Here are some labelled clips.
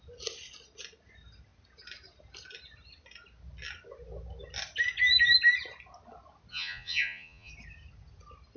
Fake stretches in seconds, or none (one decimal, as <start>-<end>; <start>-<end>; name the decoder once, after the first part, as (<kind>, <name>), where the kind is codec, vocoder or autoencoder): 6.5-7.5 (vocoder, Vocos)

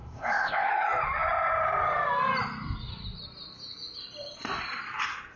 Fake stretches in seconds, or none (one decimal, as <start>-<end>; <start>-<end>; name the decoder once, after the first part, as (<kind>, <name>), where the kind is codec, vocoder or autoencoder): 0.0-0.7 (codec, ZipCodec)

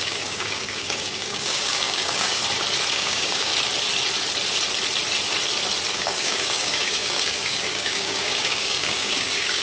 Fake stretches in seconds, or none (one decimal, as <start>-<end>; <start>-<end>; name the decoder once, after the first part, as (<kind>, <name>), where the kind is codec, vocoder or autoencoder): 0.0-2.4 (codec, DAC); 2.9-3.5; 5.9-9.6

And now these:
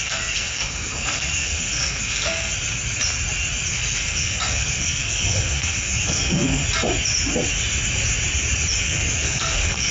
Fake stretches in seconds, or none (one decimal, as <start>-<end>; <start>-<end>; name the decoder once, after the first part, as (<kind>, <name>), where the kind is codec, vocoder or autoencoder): 0.0-2.5 (codec, SNAC); 3.7-6.6; 8.8-9.9